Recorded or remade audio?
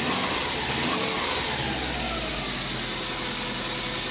recorded